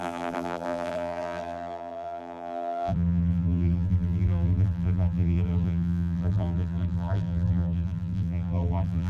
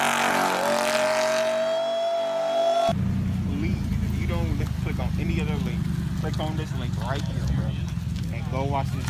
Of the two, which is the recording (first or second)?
second